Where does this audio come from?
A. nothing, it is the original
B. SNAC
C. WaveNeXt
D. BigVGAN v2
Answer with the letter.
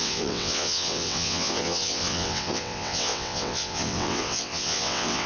C